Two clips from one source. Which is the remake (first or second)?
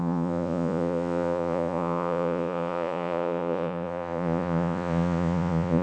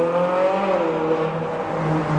first